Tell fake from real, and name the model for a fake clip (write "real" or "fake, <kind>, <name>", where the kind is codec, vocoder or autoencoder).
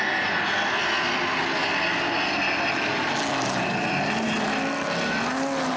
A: real